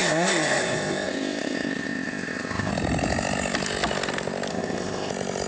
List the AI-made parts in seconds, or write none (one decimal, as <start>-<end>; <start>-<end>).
0.0-2.7; 4.5-5.1